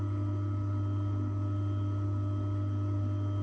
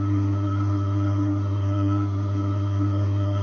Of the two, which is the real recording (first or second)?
first